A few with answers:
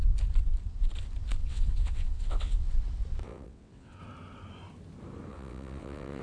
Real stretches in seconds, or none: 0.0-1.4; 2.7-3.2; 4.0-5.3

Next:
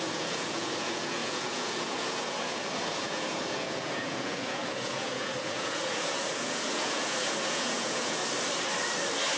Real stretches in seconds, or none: 8.2-9.4